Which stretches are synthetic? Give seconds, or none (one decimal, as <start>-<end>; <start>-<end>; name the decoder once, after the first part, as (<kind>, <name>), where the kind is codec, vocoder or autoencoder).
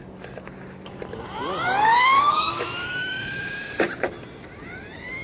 2.1-3.7 (autoencoder, DAC-VAE)